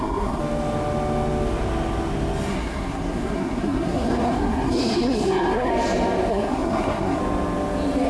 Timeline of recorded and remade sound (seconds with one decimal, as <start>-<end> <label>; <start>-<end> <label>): 0.0-0.4 remade; 0.4-2.5 recorded; 2.5-5.7 remade; 5.7-6.3 recorded; 6.3-7.2 remade; 7.2-8.1 recorded